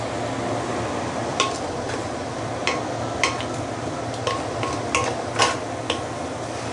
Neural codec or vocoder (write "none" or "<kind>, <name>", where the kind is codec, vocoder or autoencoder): none